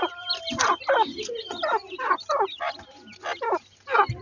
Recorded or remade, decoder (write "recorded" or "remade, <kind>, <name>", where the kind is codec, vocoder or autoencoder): recorded